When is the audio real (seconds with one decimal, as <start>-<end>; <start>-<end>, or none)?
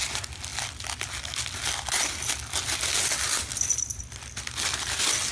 0.0-5.3